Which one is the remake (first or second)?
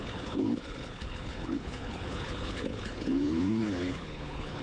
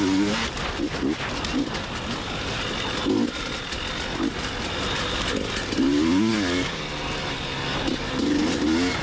first